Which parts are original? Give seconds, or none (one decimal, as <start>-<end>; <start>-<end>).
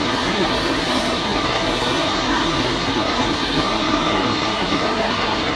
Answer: none